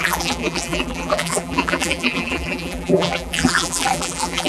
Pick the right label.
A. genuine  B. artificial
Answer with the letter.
B